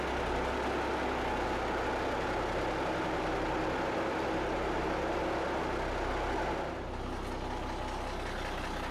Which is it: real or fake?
real